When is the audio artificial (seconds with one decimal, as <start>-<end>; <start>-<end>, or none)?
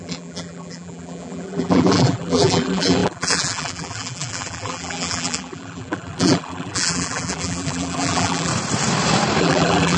0.0-8.5; 9.4-10.0